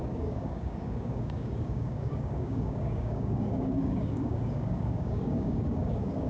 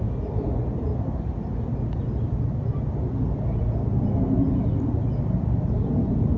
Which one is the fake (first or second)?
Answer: first